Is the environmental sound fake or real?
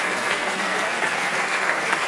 fake